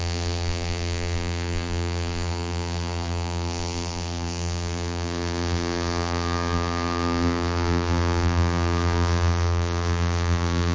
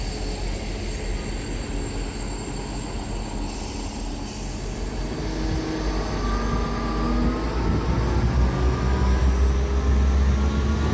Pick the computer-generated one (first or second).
first